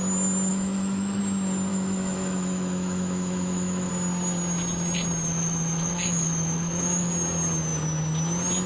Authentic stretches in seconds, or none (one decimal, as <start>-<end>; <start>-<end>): 0.0-0.5; 1.2-1.7; 3.9-5.3; 7.1-8.7